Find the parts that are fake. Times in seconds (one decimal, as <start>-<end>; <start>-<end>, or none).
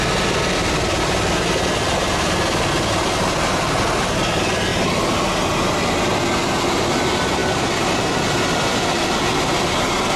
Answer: 7.4-8.7